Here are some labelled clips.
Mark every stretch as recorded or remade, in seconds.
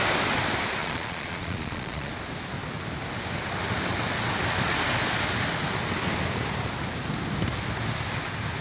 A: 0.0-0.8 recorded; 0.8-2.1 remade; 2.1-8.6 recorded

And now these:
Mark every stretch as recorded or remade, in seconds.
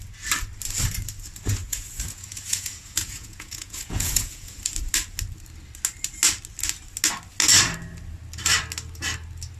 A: 0.0-1.6 recorded; 1.6-4.6 remade; 4.6-9.6 recorded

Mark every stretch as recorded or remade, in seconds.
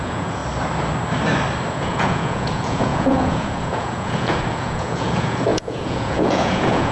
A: 0.0-0.4 remade; 0.4-1.7 recorded; 1.7-6.9 remade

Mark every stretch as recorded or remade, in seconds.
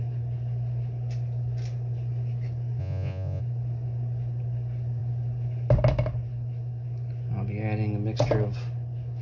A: 0.0-2.8 recorded; 2.8-3.4 remade; 3.4-9.2 recorded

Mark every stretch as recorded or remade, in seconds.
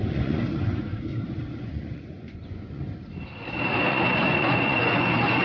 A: 0.0-0.9 remade; 0.9-1.6 recorded; 1.6-2.8 remade; 2.8-3.9 recorded; 3.9-5.4 remade